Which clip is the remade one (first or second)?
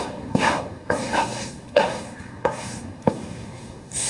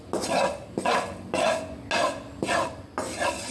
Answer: first